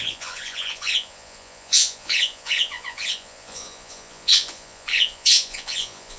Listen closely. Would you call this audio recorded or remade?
remade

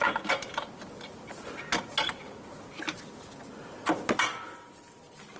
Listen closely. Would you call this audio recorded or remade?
recorded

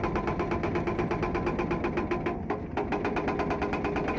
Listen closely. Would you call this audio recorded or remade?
recorded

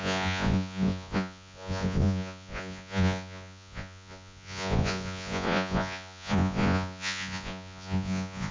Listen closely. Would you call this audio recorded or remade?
remade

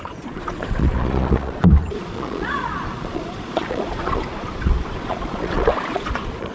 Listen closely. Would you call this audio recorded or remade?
remade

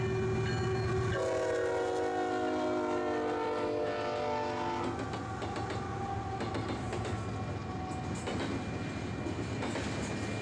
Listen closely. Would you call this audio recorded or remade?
recorded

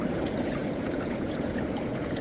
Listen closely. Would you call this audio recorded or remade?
remade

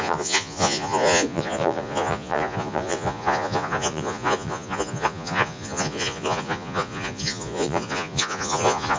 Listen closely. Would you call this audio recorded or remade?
remade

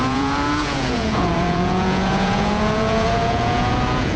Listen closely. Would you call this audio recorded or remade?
remade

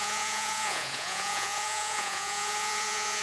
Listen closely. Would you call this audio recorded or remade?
remade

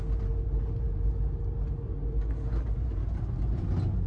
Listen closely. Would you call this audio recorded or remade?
recorded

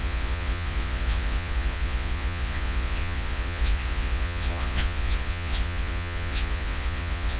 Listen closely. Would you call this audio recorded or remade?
remade